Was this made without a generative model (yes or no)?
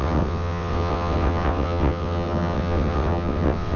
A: no